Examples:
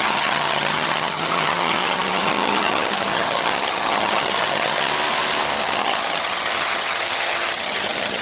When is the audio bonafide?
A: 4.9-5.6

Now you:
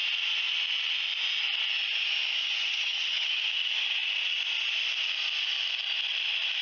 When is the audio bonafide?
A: 0.0-2.4; 3.4-6.6

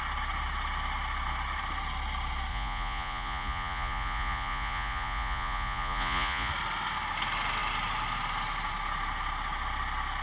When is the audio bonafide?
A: 0.0-2.5; 6.5-10.2

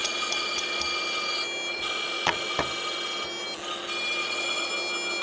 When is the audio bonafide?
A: 0.8-1.7; 2.5-4.2; 4.7-5.2

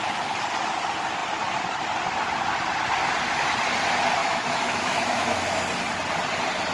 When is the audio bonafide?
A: 0.0-4.2; 5.7-6.7

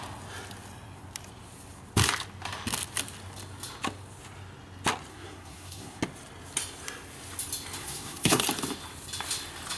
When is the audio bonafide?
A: 0.0-5.1; 6.0-7.8; 8.4-9.8

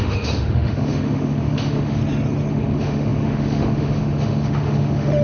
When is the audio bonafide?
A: 2.0-2.5

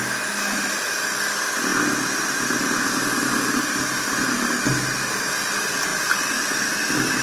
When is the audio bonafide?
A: 0.0-7.2